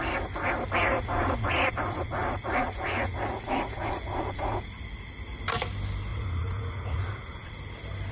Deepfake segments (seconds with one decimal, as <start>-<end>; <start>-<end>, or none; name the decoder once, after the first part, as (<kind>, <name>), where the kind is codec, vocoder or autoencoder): 0.9-4.8 (vocoder, Vocos); 6.1-7.5